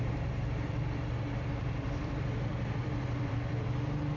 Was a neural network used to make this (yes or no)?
yes